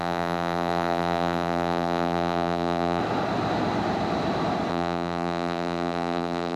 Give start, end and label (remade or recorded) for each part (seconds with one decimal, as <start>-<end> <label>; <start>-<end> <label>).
0.0-3.0 remade; 3.0-4.7 recorded; 4.7-6.6 remade